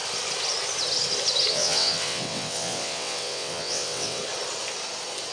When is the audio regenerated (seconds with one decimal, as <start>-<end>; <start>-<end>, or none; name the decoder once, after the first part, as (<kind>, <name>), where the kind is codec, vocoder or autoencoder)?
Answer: 1.5-4.2 (vocoder, WaveNeXt)